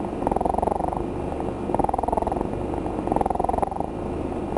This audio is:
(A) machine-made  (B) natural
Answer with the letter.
B